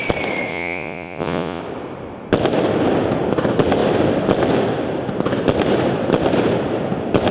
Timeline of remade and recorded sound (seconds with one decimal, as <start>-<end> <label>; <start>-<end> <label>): 0.0-0.5 recorded; 0.5-1.6 remade; 1.6-7.3 recorded